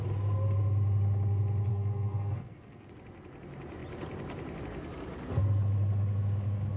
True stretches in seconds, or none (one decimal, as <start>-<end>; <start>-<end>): 0.0-1.7; 2.9-6.8